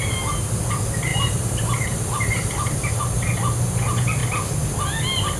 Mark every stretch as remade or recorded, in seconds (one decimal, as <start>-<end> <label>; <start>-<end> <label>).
0.0-1.1 recorded; 1.1-3.0 remade; 3.0-5.4 recorded